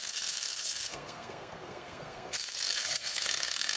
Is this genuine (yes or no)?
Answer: no